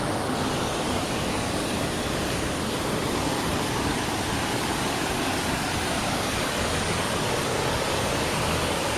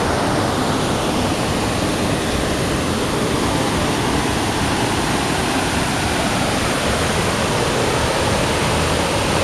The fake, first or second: first